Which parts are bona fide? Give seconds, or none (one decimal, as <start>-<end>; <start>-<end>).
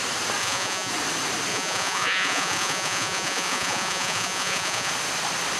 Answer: 0.0-0.4; 0.9-1.5; 4.9-5.6